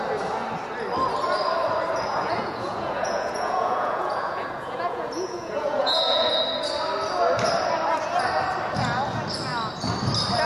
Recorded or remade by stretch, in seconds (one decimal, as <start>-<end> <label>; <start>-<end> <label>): 0.0-2.1 recorded; 2.1-6.3 remade; 6.3-10.5 recorded